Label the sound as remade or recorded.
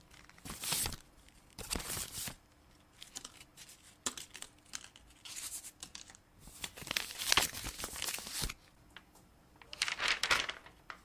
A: recorded